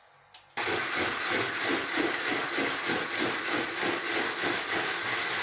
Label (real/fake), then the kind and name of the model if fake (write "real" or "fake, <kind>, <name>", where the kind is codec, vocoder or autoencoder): real